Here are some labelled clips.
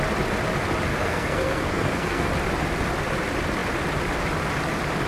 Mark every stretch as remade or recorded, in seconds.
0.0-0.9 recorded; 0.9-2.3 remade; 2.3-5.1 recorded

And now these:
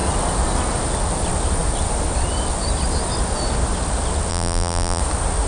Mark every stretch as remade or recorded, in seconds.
0.0-4.3 recorded; 4.3-5.0 remade; 5.0-5.5 recorded

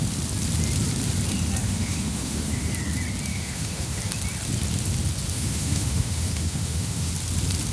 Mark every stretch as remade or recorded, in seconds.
0.0-1.6 recorded; 1.6-2.7 remade; 2.7-3.3 recorded; 3.3-4.0 remade; 4.0-5.3 recorded; 5.3-7.1 remade; 7.1-7.7 recorded